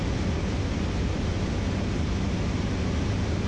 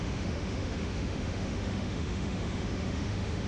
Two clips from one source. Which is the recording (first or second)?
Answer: first